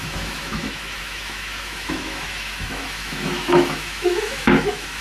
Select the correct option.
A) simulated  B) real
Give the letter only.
A